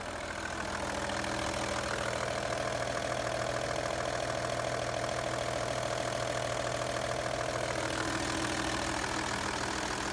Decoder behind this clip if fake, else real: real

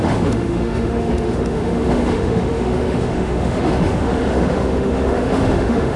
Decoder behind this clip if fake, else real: fake, autoencoder, DAC-VAE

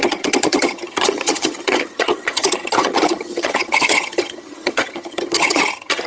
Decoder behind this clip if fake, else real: fake, vocoder, HiFi-GAN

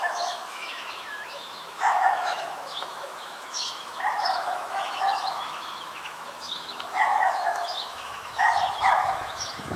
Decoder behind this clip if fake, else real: fake, autoencoder, DAC-VAE